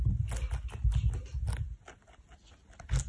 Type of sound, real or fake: real